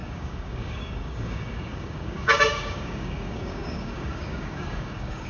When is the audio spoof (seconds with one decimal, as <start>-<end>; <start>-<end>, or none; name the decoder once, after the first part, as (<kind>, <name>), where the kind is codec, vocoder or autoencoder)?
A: 0.0-5.3 (codec, DAC)